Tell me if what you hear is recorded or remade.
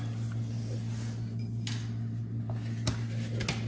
recorded